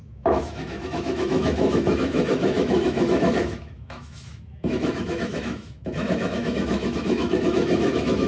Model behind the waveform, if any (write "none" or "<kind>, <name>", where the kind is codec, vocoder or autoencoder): autoencoder, DAC-VAE